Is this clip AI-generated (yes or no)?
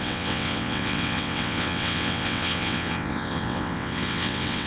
yes